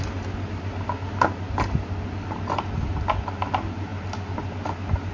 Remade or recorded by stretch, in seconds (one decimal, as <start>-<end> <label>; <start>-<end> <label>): 0.0-5.1 recorded